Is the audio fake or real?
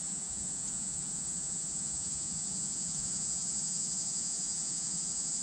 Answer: fake